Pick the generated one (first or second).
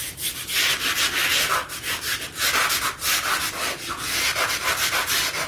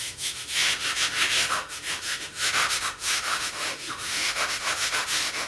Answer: second